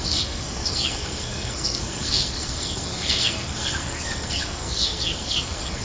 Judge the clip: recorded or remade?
remade